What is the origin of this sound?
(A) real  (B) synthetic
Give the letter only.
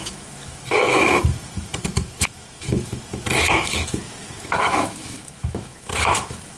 B